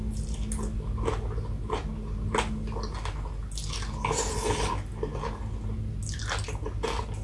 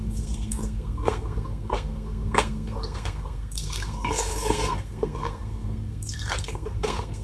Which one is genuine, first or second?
first